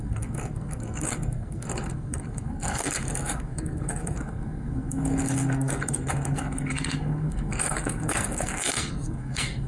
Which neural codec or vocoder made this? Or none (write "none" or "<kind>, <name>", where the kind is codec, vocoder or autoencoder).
codec, SNAC